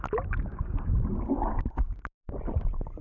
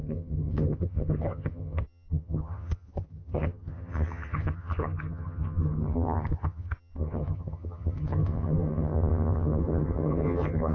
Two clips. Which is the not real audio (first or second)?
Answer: second